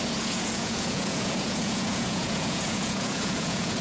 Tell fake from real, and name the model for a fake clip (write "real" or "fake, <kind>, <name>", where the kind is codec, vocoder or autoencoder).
fake, vocoder, Vocos